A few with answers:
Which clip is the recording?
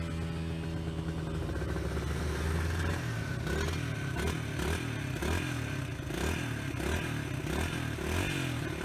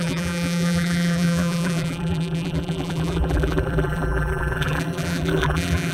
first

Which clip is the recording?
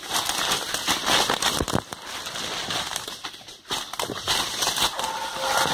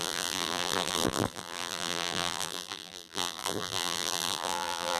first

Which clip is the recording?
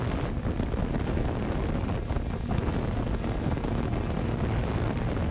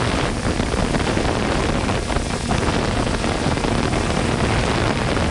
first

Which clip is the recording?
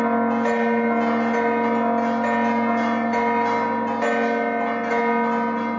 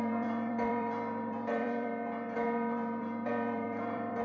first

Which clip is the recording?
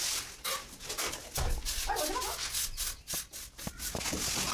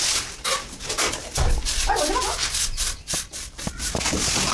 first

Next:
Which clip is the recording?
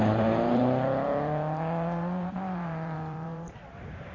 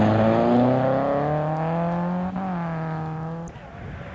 second